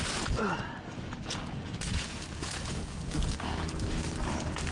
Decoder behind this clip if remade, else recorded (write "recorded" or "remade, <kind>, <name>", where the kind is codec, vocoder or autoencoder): remade, codec, DAC